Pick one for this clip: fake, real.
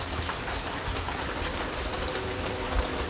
real